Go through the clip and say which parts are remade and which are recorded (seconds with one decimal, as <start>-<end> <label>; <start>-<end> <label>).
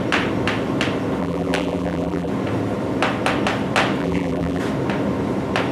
0.0-1.2 recorded; 1.2-2.3 remade; 2.3-4.0 recorded; 4.0-4.6 remade; 4.6-5.7 recorded